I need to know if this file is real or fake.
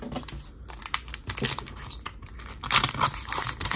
real